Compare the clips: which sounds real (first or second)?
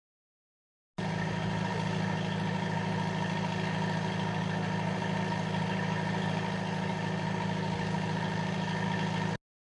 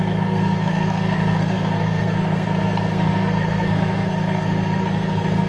first